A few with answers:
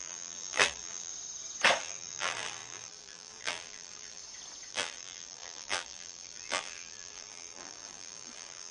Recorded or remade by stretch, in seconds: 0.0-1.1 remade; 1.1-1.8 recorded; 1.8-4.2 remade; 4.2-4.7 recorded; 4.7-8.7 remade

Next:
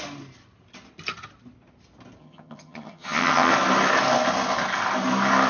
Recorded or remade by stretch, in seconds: 0.0-2.2 recorded; 2.2-3.5 remade; 3.5-5.5 recorded